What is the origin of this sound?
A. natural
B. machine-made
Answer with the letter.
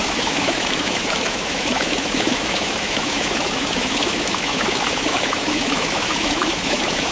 B